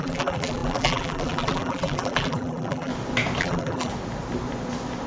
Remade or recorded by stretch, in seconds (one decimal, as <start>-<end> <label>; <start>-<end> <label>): 0.0-2.9 remade; 2.9-3.4 recorded; 3.4-3.9 remade; 3.9-5.1 recorded